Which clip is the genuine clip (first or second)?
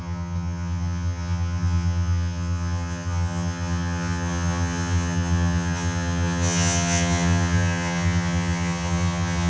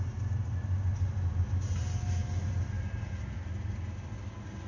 second